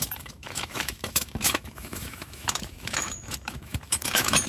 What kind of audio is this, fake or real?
fake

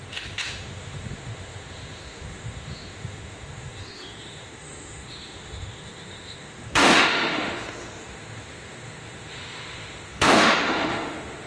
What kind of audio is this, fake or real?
fake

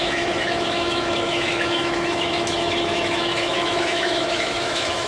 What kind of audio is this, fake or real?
fake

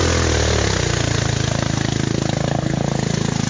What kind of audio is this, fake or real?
real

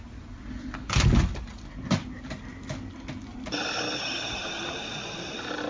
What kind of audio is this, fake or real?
real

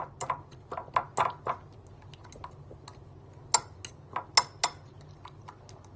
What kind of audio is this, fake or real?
real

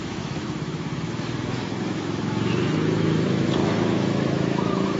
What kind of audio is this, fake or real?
fake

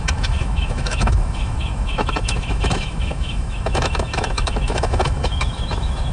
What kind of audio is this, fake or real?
fake